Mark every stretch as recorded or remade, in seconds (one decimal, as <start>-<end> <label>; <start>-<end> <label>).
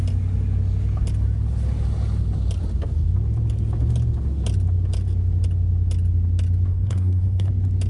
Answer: 0.0-6.7 recorded; 6.7-7.5 remade; 7.5-7.9 recorded